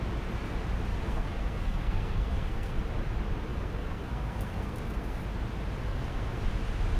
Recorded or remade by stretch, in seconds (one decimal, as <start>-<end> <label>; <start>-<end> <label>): 0.0-0.9 recorded; 0.9-2.8 remade; 2.8-3.5 recorded; 3.5-5.2 remade; 5.2-5.8 recorded; 5.8-6.4 remade; 6.4-7.0 recorded